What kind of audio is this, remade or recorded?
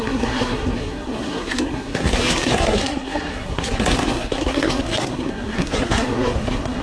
remade